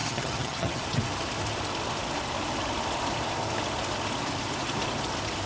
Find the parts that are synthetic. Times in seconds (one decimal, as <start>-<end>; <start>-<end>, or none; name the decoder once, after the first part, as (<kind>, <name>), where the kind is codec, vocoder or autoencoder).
0.0-0.8 (vocoder, HiFi-GAN)